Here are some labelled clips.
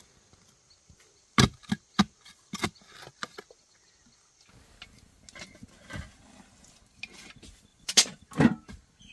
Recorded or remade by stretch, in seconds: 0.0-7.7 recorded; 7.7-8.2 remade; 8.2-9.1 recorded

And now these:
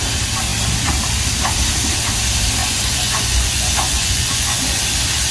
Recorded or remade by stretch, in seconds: 0.0-2.6 recorded; 2.6-4.8 remade; 4.8-5.3 recorded

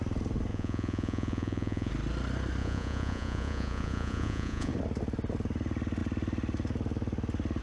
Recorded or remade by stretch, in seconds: 0.0-0.5 recorded; 0.5-1.9 remade; 1.9-2.6 recorded; 2.6-4.7 remade; 4.7-7.6 recorded